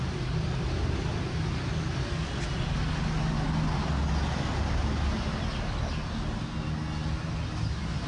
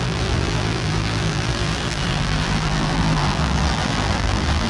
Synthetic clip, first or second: second